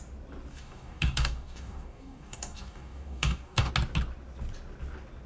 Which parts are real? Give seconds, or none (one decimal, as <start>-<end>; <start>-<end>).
0.0-0.5; 3.7-5.3